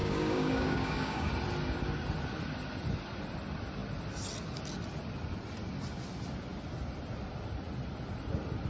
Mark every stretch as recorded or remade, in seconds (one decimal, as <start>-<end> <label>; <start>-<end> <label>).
0.0-1.3 remade; 1.3-8.7 recorded